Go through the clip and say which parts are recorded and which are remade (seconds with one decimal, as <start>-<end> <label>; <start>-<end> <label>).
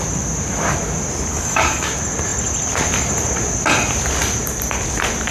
0.0-1.3 recorded; 1.3-1.9 remade; 1.9-5.3 recorded